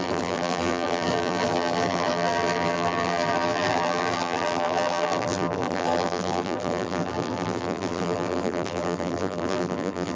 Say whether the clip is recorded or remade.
remade